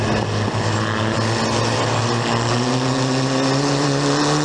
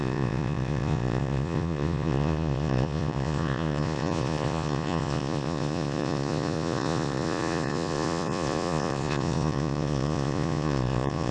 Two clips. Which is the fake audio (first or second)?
second